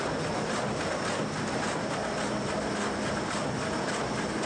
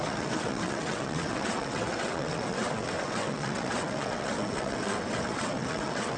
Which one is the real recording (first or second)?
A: first